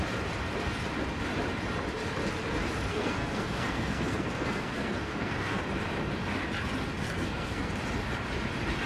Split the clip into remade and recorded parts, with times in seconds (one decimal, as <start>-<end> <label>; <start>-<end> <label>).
0.0-2.9 recorded; 2.9-5.6 remade; 5.6-7.0 recorded; 7.0-7.7 remade; 7.7-8.9 recorded